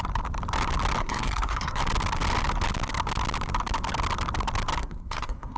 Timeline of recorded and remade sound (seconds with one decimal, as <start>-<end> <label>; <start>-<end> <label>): 0.0-1.0 recorded; 1.0-1.8 remade; 1.8-4.8 recorded; 4.8-5.6 remade